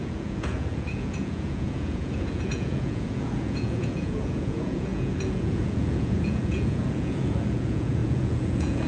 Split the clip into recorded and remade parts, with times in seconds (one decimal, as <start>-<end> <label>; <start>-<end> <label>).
0.0-8.9 remade